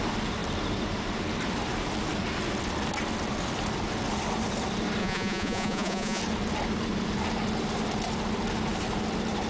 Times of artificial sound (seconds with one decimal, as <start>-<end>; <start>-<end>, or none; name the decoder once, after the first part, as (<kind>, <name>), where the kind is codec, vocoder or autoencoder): 5.0-6.2 (vocoder, Vocos)